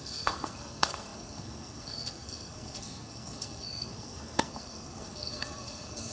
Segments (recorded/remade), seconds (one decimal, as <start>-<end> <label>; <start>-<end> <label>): 0.0-6.1 remade